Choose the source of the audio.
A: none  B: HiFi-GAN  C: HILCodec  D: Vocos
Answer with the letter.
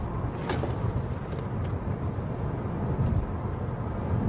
A